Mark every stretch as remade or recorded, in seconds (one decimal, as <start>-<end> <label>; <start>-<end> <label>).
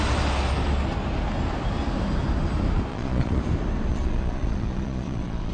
0.0-2.9 recorded; 2.9-3.4 remade; 3.4-3.9 recorded; 3.9-5.5 remade